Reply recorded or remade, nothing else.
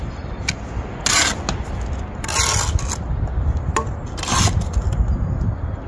recorded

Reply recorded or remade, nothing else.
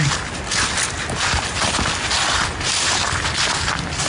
recorded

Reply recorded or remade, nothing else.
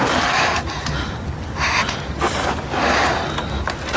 recorded